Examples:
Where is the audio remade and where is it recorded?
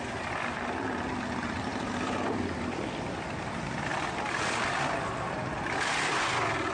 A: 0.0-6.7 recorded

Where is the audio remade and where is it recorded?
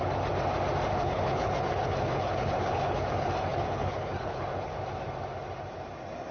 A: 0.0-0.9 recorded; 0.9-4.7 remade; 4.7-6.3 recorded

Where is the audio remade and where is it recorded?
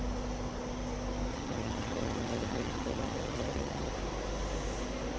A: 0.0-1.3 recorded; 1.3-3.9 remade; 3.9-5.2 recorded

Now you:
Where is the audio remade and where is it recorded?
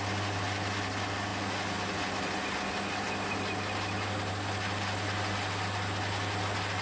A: 0.0-6.8 recorded